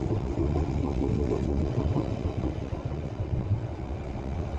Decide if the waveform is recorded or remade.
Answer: remade